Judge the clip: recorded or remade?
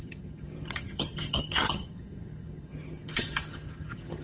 remade